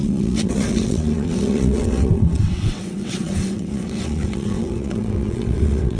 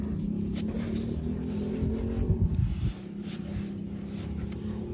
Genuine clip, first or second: second